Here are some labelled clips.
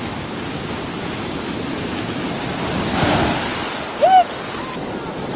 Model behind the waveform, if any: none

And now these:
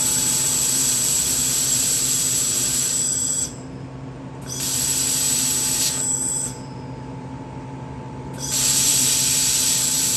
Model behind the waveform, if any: vocoder, BigVGAN v2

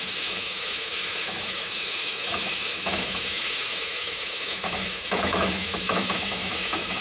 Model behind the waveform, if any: autoencoder, DAC-VAE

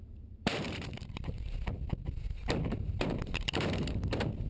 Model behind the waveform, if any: vocoder, BigVGAN v2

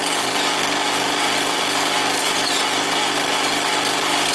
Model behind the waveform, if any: none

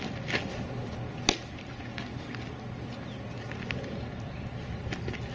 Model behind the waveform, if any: none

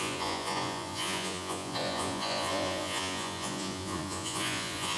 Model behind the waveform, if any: vocoder, Vocos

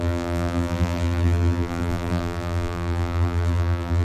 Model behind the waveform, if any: vocoder, BigVGAN v2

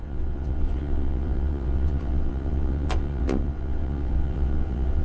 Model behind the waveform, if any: vocoder, WaveNeXt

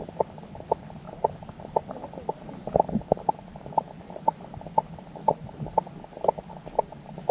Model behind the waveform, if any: none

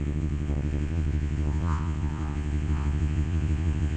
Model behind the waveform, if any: vocoder, Vocos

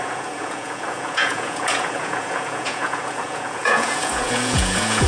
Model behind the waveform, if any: vocoder, Vocos